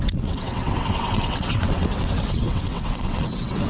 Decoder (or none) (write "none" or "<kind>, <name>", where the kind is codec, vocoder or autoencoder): vocoder, WaveNeXt